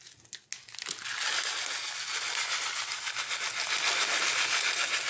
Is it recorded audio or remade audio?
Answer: recorded